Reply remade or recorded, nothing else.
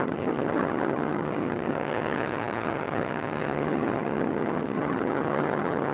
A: remade